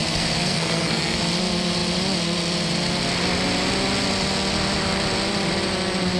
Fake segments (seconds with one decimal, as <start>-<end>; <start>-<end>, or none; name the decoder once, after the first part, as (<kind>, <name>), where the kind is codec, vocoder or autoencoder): 0.0-1.2 (codec, SNAC)